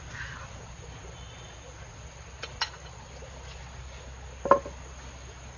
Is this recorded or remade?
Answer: recorded